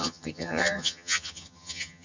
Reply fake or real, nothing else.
fake